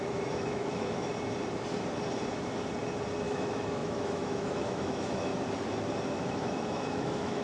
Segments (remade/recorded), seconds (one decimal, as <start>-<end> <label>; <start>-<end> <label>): 0.0-1.1 remade; 1.1-3.3 recorded; 3.3-5.3 remade; 5.3-6.1 recorded; 6.1-7.4 remade